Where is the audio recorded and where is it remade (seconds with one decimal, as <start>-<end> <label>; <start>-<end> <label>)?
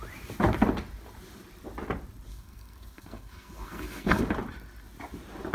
0.0-2.3 recorded; 2.3-4.2 remade; 4.2-5.5 recorded